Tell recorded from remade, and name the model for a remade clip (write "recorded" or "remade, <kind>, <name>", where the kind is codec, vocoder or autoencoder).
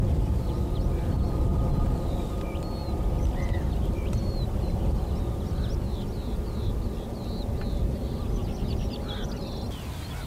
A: recorded